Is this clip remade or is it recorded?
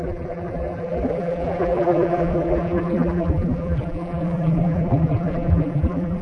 remade